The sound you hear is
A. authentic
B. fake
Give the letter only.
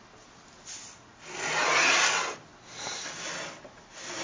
A